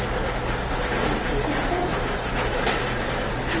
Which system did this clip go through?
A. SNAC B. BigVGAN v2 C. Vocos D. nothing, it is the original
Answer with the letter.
D